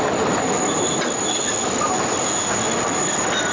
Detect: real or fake real